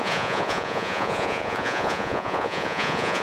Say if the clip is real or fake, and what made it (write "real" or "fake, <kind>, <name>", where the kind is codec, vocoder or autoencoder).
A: fake, vocoder, Vocos